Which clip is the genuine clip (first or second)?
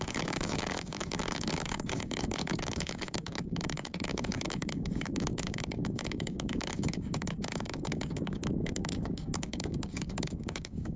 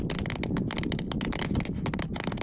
second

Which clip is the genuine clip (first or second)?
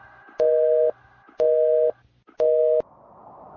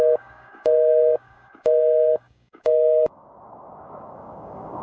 first